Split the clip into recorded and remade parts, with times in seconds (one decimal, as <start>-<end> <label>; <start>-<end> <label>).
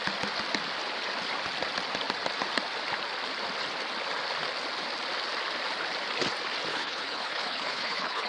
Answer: 0.0-6.7 recorded; 6.7-8.3 remade